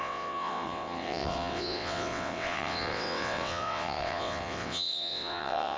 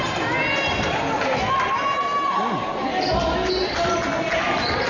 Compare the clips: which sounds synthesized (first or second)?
first